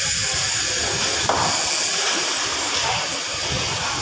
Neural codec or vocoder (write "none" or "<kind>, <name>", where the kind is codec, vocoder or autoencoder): none